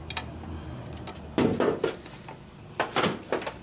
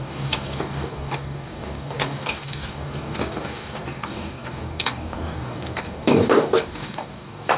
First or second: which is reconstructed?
second